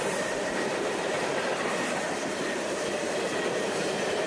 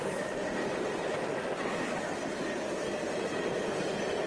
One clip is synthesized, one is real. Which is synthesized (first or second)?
first